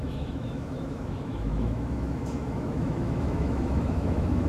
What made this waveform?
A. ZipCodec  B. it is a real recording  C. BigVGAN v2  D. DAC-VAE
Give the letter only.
D